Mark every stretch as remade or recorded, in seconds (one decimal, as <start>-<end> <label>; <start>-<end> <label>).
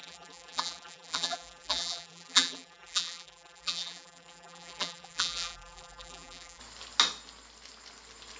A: 0.0-6.6 remade; 6.6-8.4 recorded